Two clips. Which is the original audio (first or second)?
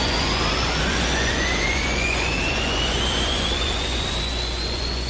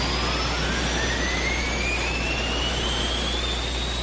second